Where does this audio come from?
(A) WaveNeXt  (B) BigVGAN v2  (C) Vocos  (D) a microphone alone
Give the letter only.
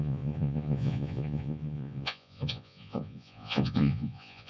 C